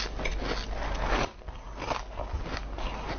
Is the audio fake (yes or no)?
no